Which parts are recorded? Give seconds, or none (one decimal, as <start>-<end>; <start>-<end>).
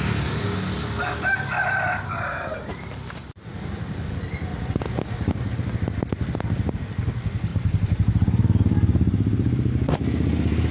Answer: 0.0-4.5; 5.3-7.5; 9.7-10.7